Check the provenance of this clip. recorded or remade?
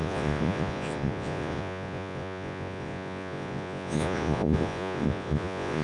remade